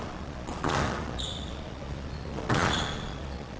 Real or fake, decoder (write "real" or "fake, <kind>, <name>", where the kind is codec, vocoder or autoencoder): fake, vocoder, Vocos